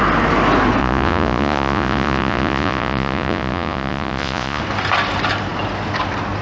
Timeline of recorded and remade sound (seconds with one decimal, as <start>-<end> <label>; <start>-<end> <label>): 0.0-0.8 recorded; 0.8-4.6 remade; 4.6-6.4 recorded